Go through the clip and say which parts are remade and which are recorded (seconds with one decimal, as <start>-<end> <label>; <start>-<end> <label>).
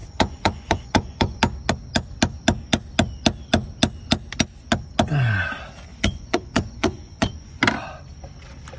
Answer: 0.0-1.4 remade; 1.4-5.9 recorded; 5.9-7.6 remade; 7.6-8.8 recorded